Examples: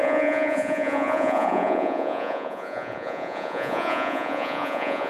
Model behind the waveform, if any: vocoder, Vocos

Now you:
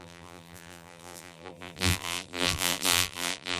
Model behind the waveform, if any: vocoder, BigVGAN v2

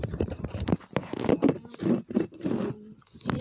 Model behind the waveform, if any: none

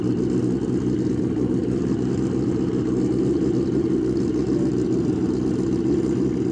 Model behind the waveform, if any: none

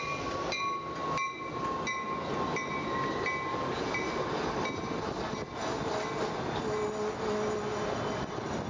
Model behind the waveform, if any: none